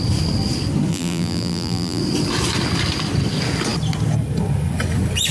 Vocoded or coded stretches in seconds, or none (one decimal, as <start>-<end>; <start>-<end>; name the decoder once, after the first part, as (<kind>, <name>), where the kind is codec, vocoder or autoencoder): 0.9-2.0 (vocoder, BigVGAN v2)